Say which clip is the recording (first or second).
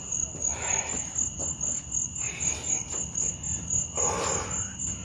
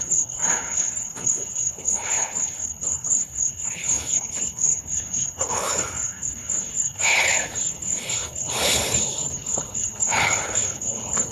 first